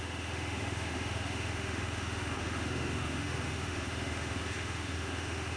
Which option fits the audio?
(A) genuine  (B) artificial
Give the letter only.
B